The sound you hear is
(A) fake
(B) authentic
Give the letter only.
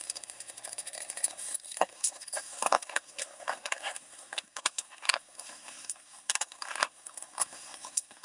A